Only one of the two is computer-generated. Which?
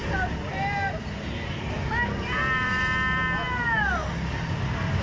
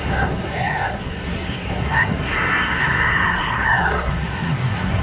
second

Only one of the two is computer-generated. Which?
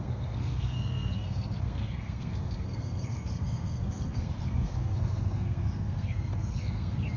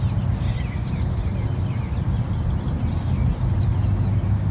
first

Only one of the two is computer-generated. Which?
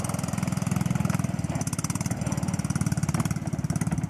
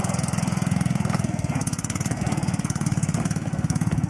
second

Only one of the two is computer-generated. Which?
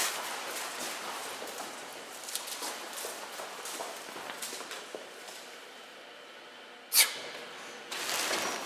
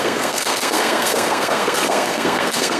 second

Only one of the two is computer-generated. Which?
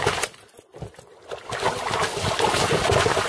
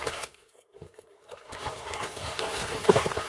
second